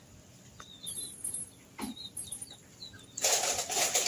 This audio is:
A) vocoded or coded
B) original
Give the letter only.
B